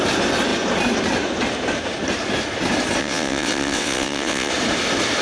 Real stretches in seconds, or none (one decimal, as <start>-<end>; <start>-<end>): 0.0-3.0; 4.5-5.2